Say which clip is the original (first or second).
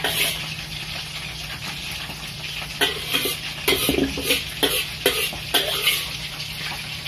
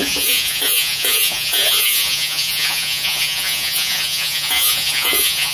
first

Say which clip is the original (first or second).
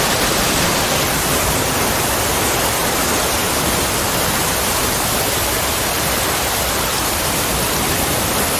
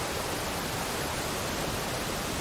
second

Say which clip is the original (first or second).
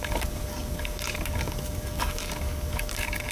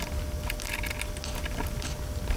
second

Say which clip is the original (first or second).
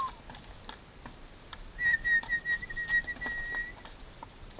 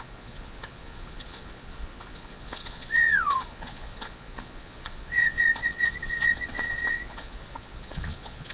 first